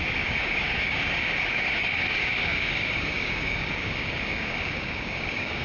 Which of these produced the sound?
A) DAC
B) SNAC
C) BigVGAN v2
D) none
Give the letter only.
A